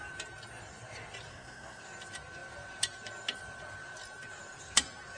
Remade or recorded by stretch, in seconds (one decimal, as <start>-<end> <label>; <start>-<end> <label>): 0.0-1.3 recorded; 1.3-1.8 remade; 1.8-5.2 recorded